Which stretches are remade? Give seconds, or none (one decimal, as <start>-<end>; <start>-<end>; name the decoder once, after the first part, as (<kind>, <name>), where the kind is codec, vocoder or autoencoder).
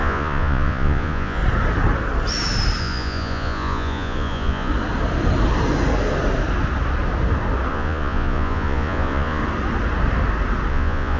0.0-1.4 (vocoder, Vocos); 2.8-4.7; 7.7-9.4; 10.7-11.2